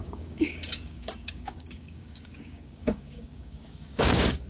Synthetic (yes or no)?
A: yes